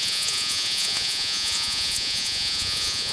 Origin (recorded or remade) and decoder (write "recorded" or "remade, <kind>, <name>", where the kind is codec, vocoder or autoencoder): remade, vocoder, Vocos